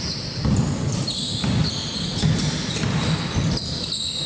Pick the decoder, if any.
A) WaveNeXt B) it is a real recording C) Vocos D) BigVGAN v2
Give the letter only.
B